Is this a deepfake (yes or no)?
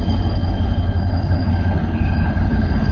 yes